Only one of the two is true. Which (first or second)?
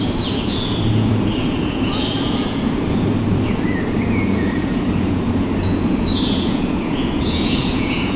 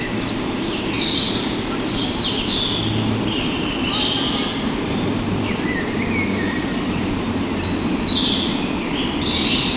second